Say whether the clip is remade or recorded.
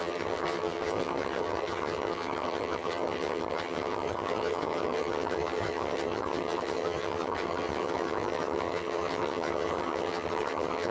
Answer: remade